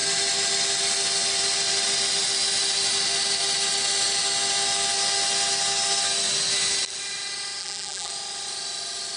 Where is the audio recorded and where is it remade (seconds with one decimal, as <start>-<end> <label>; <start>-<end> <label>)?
0.0-7.6 recorded; 7.6-8.1 remade; 8.1-9.2 recorded

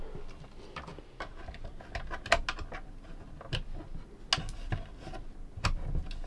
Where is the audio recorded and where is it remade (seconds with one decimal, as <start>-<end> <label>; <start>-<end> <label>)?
0.0-6.3 recorded

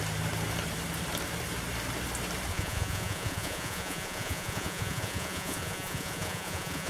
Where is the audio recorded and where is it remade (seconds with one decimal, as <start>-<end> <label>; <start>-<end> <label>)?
0.0-2.5 recorded; 2.5-6.9 remade

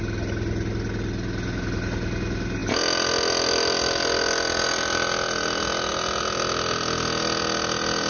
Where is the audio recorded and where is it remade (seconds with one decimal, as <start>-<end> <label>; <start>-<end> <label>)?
0.0-8.1 recorded

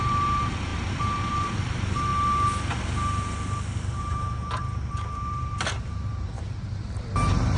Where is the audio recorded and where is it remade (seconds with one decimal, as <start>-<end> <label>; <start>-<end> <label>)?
0.0-2.1 remade; 2.1-4.0 recorded; 4.0-7.6 remade

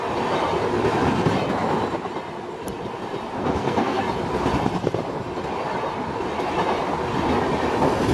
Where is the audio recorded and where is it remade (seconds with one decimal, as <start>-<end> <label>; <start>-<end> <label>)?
0.0-3.4 recorded; 3.4-4.0 remade; 4.0-8.1 recorded

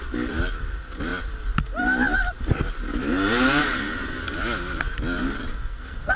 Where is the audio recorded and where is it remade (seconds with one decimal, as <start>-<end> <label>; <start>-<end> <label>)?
0.0-5.5 recorded; 5.5-6.2 remade

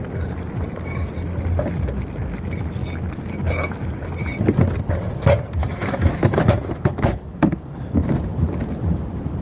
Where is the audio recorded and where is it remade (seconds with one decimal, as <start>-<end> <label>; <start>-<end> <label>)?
0.0-5.6 recorded; 5.6-7.6 remade; 7.6-9.4 recorded